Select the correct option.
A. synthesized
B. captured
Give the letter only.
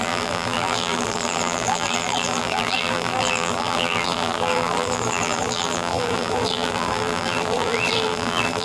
A